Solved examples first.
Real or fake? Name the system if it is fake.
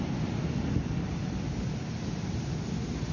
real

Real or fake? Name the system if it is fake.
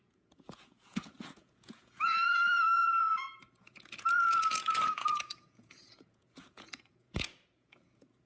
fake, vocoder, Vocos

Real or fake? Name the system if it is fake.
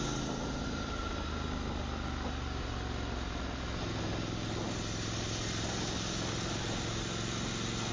real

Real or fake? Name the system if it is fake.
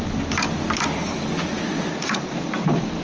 real